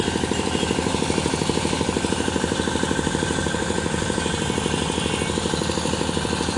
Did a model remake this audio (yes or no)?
no